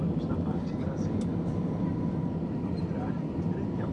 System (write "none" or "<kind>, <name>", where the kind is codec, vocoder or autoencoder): none